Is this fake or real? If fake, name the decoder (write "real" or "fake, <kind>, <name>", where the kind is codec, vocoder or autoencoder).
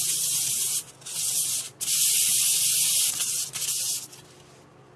real